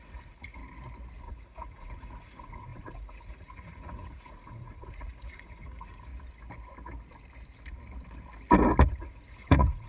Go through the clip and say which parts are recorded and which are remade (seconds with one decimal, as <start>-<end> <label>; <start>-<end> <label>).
0.0-0.6 remade; 0.6-1.2 recorded; 1.2-6.1 remade; 6.1-8.9 recorded; 8.9-9.9 remade